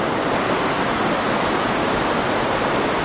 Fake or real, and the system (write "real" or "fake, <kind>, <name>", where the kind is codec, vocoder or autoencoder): real